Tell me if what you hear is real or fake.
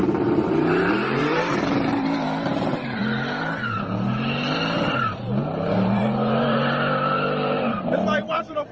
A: fake